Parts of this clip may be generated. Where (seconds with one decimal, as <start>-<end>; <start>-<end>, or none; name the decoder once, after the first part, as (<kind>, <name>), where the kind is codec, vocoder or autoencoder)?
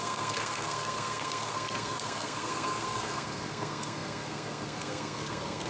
0.0-5.7 (codec, SNAC)